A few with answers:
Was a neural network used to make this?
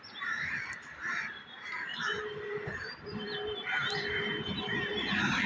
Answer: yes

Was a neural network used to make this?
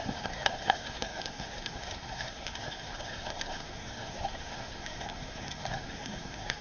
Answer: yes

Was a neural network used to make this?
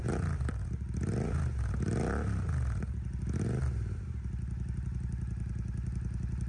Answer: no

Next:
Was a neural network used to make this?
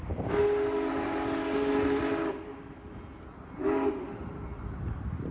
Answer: no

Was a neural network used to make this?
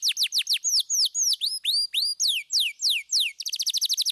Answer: no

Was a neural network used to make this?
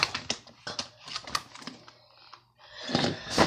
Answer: no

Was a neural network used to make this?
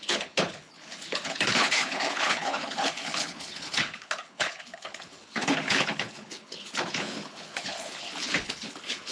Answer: yes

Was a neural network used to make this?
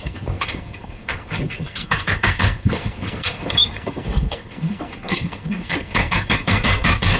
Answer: yes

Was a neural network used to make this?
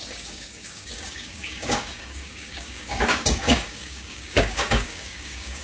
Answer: yes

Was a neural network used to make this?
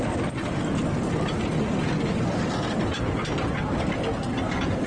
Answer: no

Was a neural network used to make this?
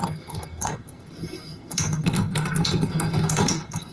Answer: yes